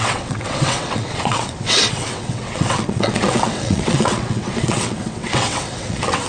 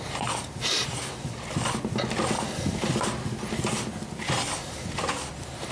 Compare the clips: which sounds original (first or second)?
second